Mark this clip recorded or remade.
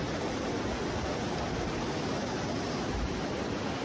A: recorded